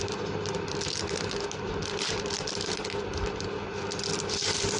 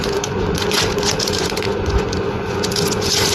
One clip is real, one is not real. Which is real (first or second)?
first